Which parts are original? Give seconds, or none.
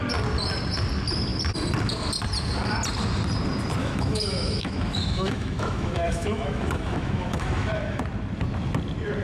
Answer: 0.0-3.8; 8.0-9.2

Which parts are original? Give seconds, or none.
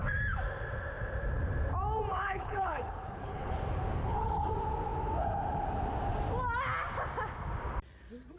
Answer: 0.0-2.1; 3.6-4.0; 4.5-8.4